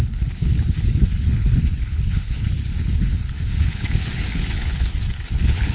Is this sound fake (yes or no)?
yes